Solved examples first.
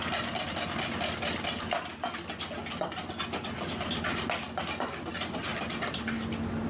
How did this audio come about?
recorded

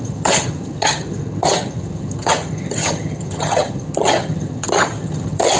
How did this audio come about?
remade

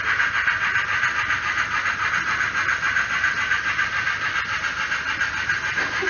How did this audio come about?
recorded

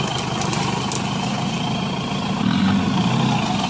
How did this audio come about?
recorded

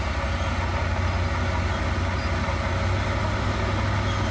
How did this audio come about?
recorded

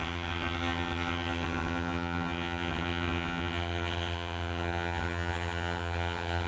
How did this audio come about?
remade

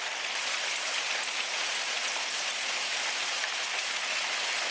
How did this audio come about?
recorded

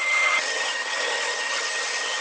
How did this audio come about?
remade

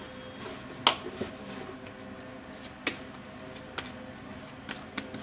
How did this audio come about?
recorded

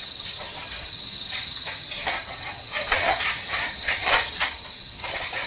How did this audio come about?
remade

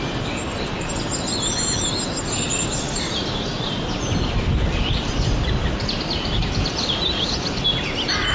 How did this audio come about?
recorded